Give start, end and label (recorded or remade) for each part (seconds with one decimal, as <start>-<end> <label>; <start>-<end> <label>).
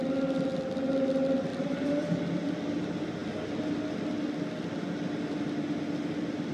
0.0-1.5 recorded; 1.5-2.1 remade; 2.1-6.5 recorded